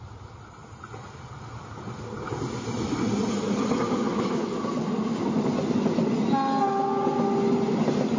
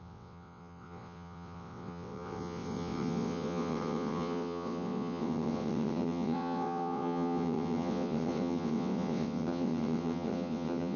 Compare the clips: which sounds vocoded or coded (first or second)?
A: second